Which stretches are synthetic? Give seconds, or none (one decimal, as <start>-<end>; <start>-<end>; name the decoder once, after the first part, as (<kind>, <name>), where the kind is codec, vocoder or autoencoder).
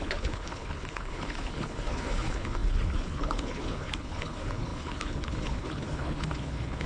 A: 0.0-6.9 (codec, HILCodec)